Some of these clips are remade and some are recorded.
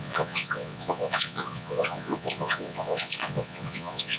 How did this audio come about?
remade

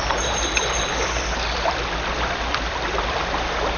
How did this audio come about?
recorded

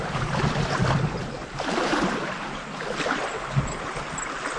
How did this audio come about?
recorded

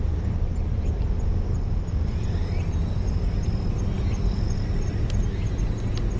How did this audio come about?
recorded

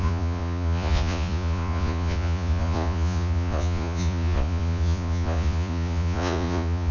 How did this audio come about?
remade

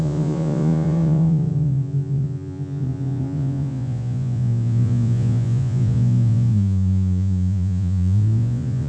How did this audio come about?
remade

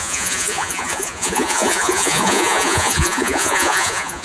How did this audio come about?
remade